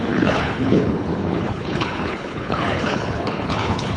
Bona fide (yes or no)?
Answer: no